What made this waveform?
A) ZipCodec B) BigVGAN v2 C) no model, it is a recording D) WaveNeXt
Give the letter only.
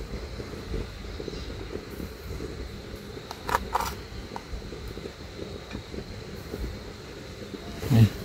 C